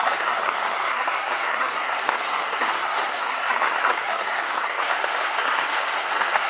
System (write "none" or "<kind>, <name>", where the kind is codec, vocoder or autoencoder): codec, SNAC